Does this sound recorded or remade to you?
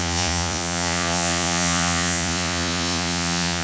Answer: remade